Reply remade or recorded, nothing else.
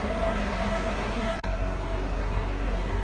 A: remade